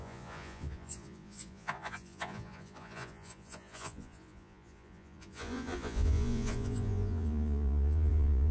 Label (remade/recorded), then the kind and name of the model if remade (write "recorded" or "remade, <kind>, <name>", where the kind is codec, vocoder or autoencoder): remade, vocoder, Vocos